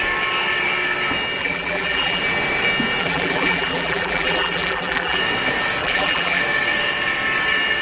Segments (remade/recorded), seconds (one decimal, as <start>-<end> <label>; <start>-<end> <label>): 0.0-1.4 recorded; 1.4-2.2 remade; 2.2-3.0 recorded; 3.0-5.2 remade; 5.2-5.8 recorded; 5.8-6.4 remade; 6.4-7.8 recorded